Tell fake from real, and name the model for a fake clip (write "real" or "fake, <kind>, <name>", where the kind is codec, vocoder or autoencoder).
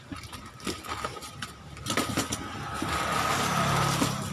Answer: real